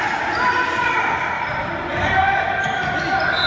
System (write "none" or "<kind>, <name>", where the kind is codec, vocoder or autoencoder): none